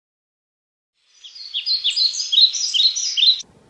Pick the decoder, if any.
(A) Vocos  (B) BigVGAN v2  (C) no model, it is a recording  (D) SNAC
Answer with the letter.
C